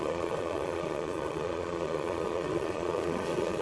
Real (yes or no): no